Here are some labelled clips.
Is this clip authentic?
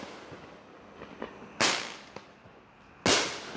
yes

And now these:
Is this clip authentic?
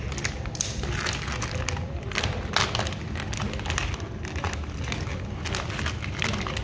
yes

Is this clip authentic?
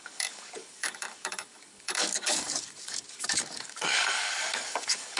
no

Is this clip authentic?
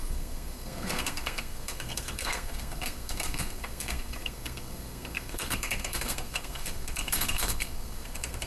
no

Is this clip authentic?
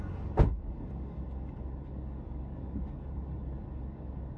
no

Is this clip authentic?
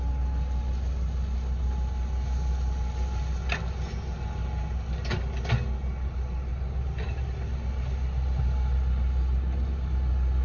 yes